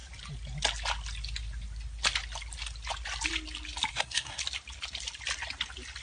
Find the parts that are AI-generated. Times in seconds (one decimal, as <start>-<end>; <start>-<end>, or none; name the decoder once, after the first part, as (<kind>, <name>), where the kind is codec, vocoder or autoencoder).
3.9-4.4 (codec, SNAC)